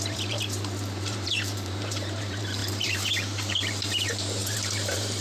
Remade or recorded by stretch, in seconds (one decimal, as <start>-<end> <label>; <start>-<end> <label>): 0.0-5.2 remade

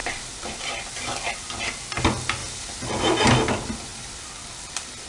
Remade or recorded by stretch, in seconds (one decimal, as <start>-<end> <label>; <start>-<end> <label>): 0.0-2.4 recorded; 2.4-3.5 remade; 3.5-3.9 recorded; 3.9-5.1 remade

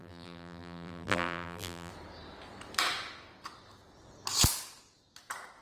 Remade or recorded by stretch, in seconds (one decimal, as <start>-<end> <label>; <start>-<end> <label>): 0.0-1.9 remade; 1.9-5.6 recorded

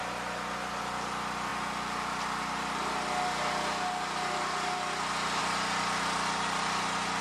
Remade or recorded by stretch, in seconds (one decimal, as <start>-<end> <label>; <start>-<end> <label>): 0.0-7.2 recorded

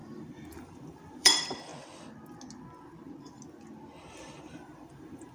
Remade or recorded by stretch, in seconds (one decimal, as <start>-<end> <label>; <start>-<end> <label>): 0.0-1.7 remade; 1.7-4.1 recorded; 4.1-5.3 remade